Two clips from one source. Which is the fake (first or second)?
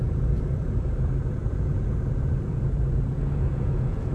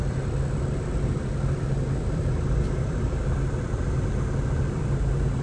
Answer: first